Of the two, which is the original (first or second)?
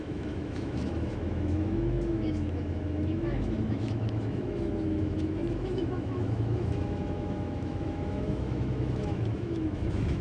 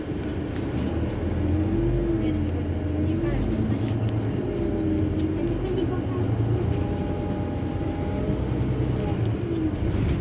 second